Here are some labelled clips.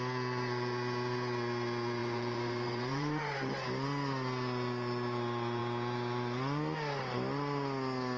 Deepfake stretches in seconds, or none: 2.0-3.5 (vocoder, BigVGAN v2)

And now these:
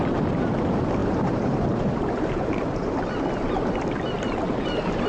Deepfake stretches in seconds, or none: 1.0-3.0 (vocoder, BigVGAN v2)

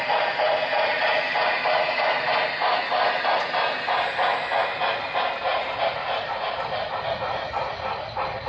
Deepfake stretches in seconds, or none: 5.5-6.3 (vocoder, BigVGAN v2)